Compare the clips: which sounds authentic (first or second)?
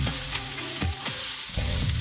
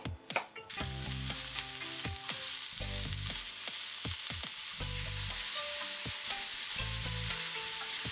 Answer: second